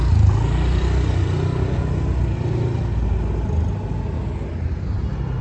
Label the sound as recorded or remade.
recorded